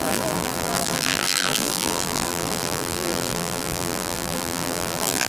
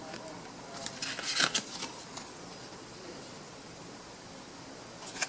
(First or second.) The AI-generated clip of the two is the first